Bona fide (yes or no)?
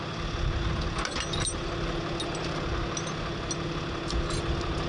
yes